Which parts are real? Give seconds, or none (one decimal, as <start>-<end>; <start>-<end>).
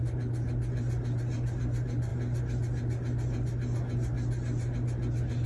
0.0-5.5